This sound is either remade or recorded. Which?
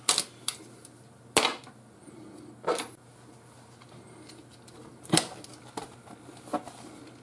recorded